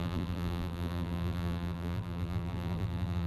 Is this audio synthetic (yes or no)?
yes